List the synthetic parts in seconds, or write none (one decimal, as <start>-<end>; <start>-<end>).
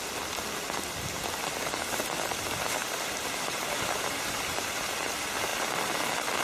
none